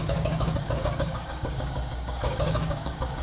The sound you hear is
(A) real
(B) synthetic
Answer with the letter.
B